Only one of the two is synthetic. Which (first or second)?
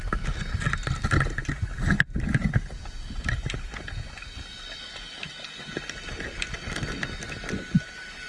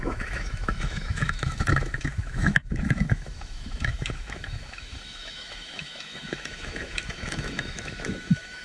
second